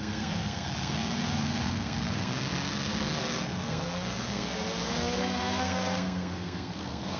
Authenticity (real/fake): fake